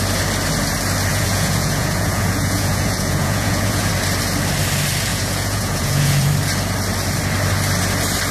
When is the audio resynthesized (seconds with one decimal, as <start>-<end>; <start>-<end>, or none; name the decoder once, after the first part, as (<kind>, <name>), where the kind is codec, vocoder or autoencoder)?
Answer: 1.1-3.9 (vocoder, Vocos); 5.1-6.3

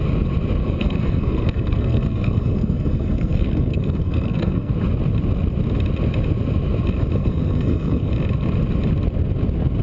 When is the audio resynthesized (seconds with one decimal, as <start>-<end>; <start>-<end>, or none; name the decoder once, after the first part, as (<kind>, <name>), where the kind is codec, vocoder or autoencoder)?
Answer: 0.6-4.7 (codec, SNAC); 7.2-8.1

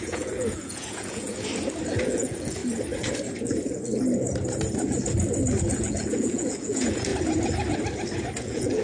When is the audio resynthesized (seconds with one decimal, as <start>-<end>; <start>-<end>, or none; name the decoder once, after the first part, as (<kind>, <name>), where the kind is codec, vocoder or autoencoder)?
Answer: 0.0-1.3 (vocoder, Vocos); 2.0-2.6; 5.6-7.1; 8.4-8.8

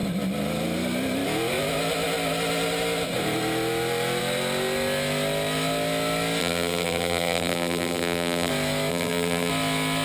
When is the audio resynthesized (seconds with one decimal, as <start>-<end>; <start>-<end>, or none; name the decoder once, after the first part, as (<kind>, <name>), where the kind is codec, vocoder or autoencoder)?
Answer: 6.4-8.5 (vocoder, BigVGAN v2); 8.9-9.5

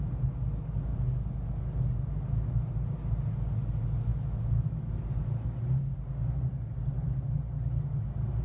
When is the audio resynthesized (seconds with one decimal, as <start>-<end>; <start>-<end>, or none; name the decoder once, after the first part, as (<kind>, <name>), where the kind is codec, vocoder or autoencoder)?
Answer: 4.1-4.9 (autoencoder, DAC-VAE)